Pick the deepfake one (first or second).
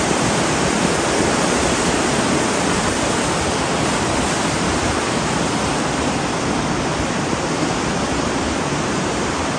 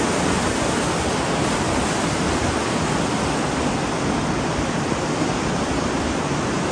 first